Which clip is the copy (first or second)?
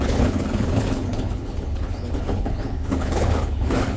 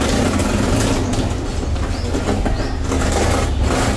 first